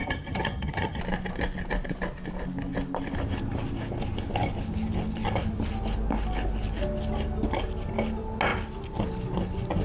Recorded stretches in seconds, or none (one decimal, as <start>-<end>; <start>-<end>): 1.0-9.8